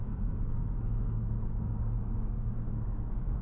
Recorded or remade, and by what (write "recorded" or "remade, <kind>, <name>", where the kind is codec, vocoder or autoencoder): remade, codec, SNAC